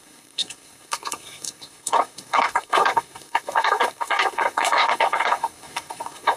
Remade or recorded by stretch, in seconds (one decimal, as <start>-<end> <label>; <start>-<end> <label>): 0.0-6.4 remade